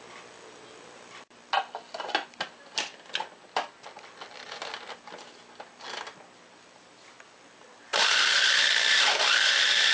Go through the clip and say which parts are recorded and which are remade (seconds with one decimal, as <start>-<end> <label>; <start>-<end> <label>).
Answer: 0.0-9.9 recorded